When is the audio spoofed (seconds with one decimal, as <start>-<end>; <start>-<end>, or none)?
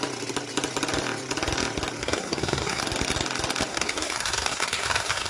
2.0-2.8; 3.7-5.3